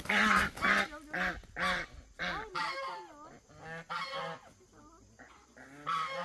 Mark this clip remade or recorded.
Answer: recorded